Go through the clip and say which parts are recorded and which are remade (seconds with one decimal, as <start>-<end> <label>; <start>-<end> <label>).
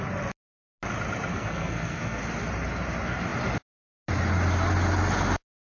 0.0-1.3 recorded; 1.3-2.2 remade; 2.2-5.7 recorded